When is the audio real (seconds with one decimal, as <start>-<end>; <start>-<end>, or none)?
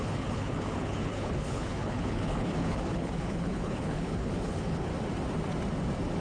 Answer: 4.9-6.2